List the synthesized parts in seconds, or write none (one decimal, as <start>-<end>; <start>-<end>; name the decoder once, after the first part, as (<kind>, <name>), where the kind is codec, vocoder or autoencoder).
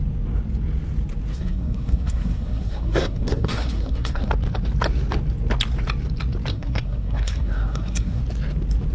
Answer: 1.3-4.3 (codec, SNAC); 6.5-8.2